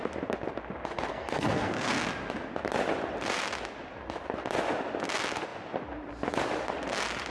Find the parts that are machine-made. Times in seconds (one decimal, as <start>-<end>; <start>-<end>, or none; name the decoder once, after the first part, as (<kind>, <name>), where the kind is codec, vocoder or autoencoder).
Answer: 1.1-1.9 (codec, SNAC)

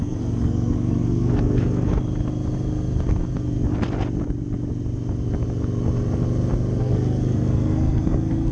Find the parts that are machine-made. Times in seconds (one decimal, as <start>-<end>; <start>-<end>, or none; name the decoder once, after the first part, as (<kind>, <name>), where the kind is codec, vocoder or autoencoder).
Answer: 0.0-1.9 (codec, SNAC); 6.8-8.5

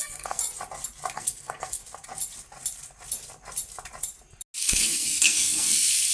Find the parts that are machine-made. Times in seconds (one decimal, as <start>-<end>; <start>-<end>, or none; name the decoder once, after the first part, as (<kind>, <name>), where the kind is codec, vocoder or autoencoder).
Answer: 0.0-0.4 (codec, SNAC); 1.1-1.8; 4.6-6.1